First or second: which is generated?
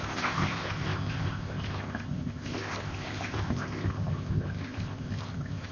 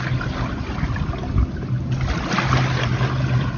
first